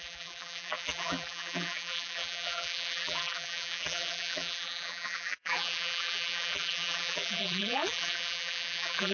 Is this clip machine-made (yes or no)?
yes